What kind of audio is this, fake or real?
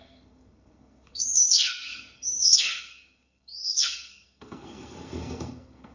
fake